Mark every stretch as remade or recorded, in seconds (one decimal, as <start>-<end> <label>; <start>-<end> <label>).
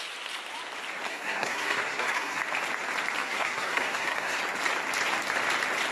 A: 0.0-1.1 recorded; 1.1-2.4 remade; 2.4-3.2 recorded; 3.2-4.4 remade; 4.4-5.9 recorded